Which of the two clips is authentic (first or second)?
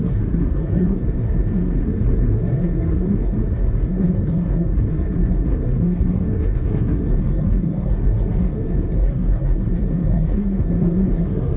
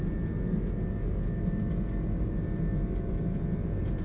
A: second